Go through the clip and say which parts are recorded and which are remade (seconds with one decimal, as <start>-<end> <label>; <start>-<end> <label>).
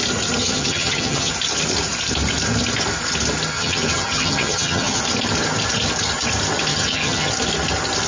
0.0-0.4 recorded; 0.4-1.3 remade; 1.3-3.5 recorded; 3.5-5.0 remade; 5.0-6.7 recorded; 6.7-7.3 remade; 7.3-8.1 recorded